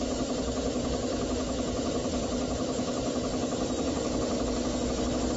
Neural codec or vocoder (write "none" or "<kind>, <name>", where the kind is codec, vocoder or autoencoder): none